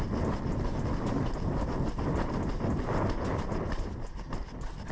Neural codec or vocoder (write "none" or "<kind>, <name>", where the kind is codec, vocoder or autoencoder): none